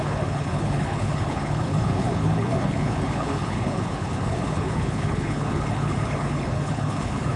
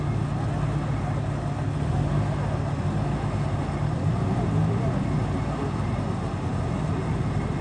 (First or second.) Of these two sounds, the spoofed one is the first